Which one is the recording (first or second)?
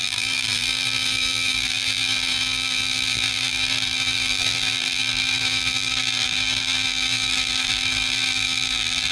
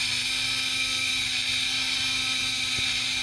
second